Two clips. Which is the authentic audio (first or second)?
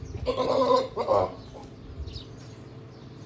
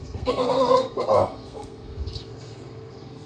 first